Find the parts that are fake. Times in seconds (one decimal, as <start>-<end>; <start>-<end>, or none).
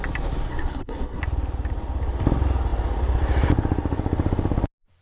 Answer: 0.5-1.2